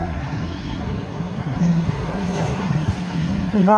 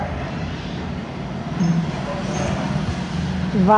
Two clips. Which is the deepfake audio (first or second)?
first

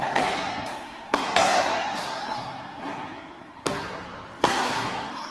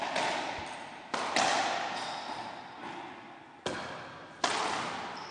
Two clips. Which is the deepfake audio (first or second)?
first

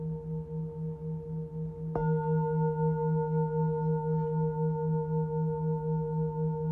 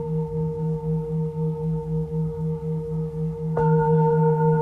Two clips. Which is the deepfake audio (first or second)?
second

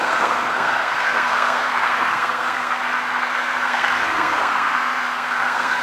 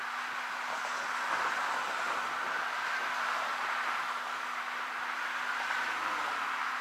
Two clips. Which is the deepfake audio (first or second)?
first